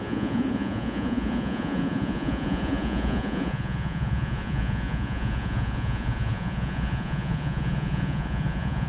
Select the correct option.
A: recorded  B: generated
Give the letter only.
B